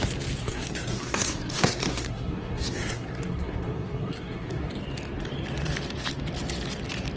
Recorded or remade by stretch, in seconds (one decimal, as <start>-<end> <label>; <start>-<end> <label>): 0.0-0.4 recorded; 0.4-4.7 remade; 4.7-7.2 recorded